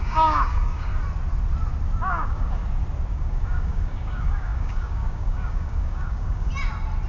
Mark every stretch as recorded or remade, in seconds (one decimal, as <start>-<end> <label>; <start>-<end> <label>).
0.0-0.9 remade; 0.9-2.1 recorded; 2.1-2.6 remade; 2.6-3.1 recorded; 3.1-6.5 remade; 6.5-7.1 recorded